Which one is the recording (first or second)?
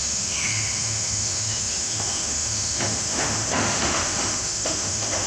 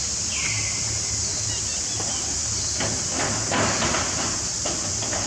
second